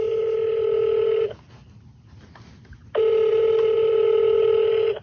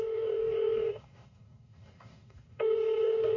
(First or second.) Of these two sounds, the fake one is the second